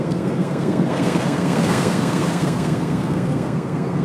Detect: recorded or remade remade